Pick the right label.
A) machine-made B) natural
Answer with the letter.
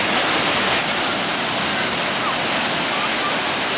B